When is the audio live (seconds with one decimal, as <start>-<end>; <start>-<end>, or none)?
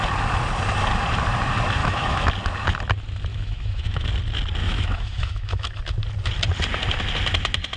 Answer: 0.0-1.8; 2.3-3.3; 4.1-4.6; 5.8-7.8